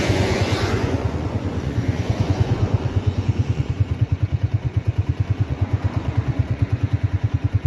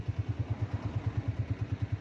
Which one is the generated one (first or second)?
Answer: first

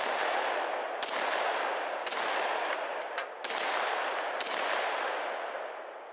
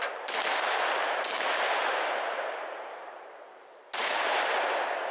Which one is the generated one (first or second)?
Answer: second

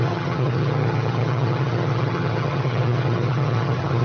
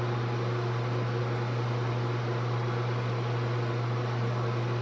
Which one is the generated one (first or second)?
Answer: first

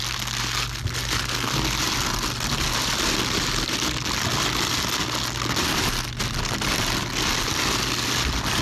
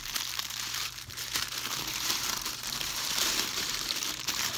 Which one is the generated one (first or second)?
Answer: second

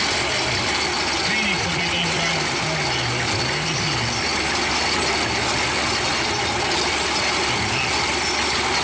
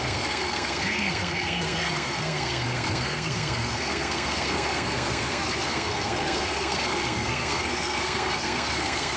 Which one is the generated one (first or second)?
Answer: second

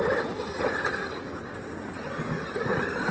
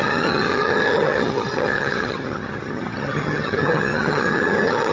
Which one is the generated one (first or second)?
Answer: second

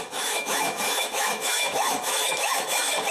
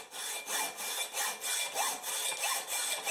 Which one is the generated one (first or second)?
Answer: first